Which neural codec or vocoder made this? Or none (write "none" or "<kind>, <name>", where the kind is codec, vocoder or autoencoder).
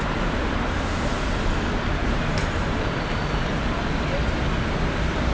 none